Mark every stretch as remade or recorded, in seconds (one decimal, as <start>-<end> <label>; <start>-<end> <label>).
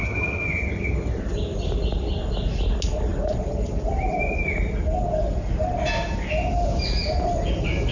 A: 0.0-1.2 remade; 1.2-7.9 recorded